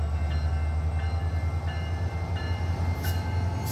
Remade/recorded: recorded